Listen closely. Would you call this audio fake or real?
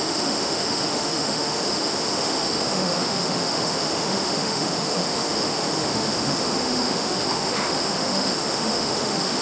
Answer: fake